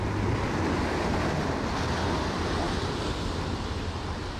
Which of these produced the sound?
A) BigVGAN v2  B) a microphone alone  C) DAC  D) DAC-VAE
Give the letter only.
B